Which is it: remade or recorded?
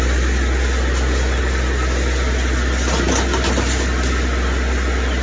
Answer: recorded